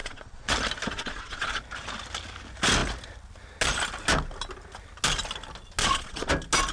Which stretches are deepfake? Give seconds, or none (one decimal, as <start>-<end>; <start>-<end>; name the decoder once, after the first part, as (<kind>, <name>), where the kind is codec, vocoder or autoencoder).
0.0-0.5 (vocoder, Vocos); 0.9-1.6; 5.8-6.3